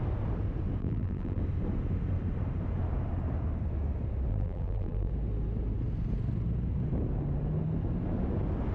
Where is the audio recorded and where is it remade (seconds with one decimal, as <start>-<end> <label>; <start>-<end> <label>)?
0.0-0.8 recorded; 0.8-1.4 remade; 1.4-4.3 recorded; 4.3-5.1 remade; 5.1-8.7 recorded